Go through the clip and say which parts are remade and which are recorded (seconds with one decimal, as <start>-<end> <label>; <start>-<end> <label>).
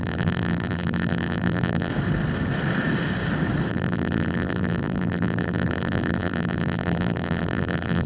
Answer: 0.0-1.9 remade; 1.9-3.7 recorded; 3.7-8.1 remade